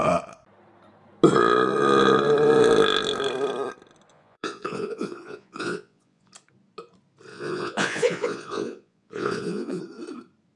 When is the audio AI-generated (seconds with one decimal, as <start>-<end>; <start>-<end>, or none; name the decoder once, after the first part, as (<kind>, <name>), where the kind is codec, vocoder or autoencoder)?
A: 4.1-6.3 (vocoder, Vocos); 7.3-9.8